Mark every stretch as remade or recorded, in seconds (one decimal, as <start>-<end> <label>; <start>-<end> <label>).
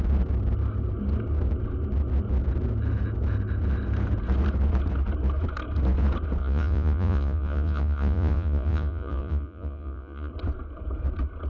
0.0-6.4 recorded; 6.4-10.3 remade; 10.3-11.5 recorded